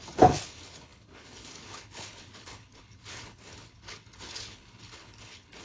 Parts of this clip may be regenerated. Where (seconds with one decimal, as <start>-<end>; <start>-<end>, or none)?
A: 0.0-5.6